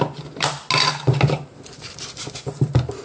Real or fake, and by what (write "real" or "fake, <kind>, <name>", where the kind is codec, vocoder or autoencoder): real